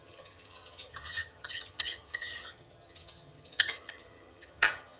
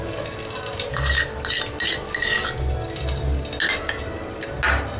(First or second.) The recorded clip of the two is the second